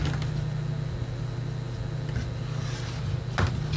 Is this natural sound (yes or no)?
yes